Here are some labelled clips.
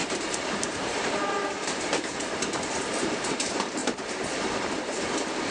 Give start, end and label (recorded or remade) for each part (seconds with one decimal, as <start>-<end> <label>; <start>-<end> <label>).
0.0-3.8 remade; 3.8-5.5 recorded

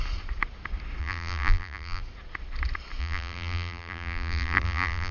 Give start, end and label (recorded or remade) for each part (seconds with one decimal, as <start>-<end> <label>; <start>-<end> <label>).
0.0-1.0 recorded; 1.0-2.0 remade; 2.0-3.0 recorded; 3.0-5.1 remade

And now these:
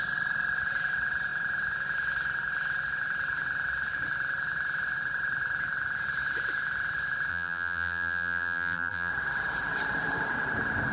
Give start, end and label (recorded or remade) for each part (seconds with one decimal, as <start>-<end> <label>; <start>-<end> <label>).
0.0-7.3 recorded; 7.3-9.1 remade; 9.1-10.9 recorded

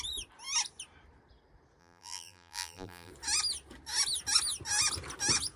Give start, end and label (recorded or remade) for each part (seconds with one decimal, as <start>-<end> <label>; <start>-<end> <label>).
0.0-1.8 recorded; 1.8-3.1 remade; 3.1-5.6 recorded